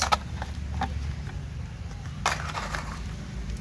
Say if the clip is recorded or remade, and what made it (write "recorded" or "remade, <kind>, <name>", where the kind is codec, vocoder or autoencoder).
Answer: recorded